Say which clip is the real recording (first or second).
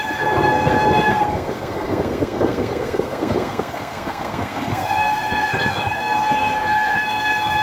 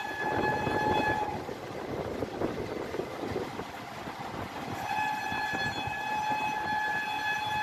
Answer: second